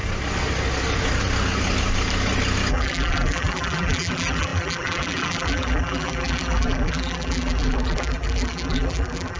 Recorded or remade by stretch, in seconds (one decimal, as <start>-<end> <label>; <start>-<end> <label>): 0.0-2.7 recorded; 2.7-9.4 remade